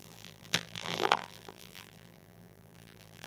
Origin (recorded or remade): remade